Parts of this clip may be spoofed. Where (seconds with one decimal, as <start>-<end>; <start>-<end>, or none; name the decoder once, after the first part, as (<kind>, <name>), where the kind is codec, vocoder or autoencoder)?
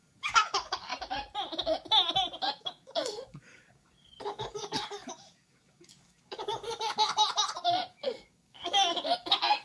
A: 0.0-0.9 (codec, DAC); 2.6-7.2; 7.9-9.6